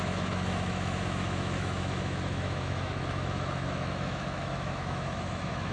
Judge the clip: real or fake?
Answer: fake